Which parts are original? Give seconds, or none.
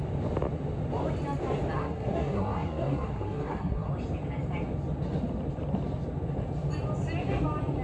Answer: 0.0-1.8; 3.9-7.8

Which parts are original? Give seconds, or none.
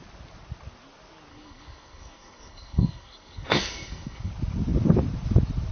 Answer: 0.0-1.3; 4.3-5.7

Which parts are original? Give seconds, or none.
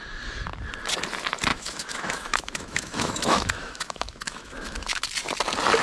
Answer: 0.0-1.5; 5.0-5.8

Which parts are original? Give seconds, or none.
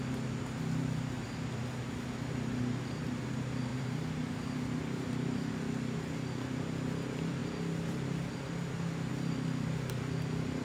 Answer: 0.0-3.7; 5.5-10.6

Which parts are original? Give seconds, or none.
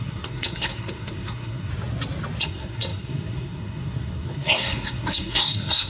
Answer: 1.7-2.4